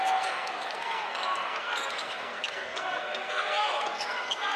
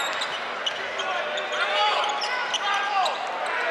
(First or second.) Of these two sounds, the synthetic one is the first